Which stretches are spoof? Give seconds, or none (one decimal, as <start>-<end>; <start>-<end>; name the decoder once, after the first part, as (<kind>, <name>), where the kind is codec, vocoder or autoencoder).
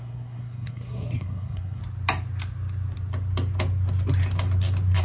0.0-1.8 (codec, SNAC)